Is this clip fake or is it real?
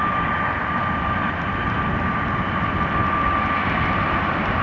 real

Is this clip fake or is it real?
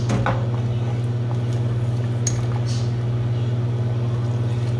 real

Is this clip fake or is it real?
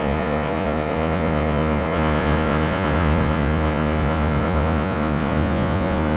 fake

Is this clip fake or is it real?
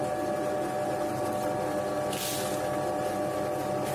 real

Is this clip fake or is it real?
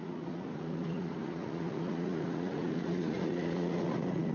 fake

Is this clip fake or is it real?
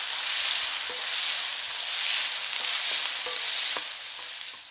real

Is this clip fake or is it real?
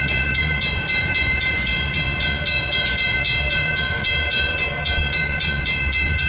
fake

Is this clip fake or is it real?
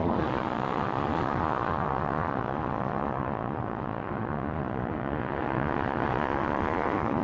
fake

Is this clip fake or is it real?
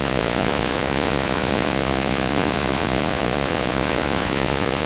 fake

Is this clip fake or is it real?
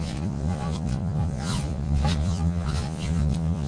fake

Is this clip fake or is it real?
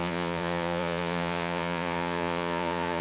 fake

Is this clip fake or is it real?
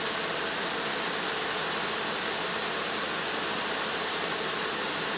real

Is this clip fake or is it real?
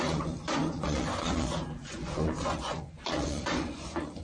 fake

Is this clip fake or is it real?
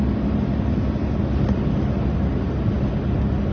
real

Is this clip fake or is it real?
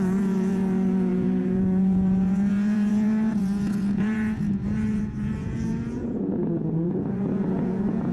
fake